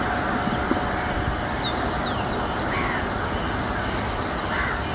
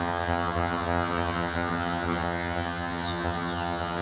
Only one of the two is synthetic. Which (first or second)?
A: second